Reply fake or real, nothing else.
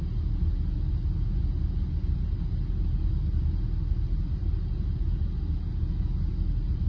real